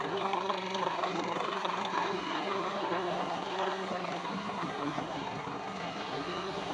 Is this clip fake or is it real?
fake